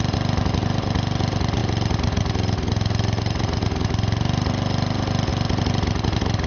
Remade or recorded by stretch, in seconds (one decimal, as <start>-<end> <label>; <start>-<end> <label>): 0.0-6.5 recorded